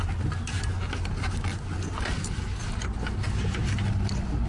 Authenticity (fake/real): real